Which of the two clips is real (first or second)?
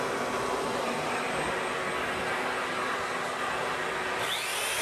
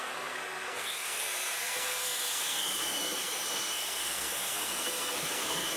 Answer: first